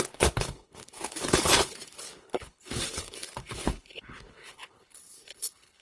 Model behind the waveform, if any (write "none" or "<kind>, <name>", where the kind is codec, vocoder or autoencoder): codec, HILCodec